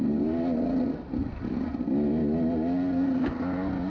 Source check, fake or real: real